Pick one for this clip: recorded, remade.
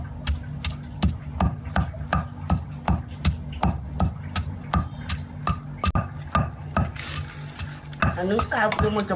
recorded